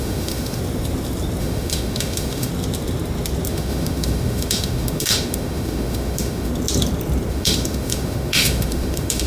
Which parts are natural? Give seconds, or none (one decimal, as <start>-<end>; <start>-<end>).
0.6-1.4; 2.5-3.5; 6.5-7.3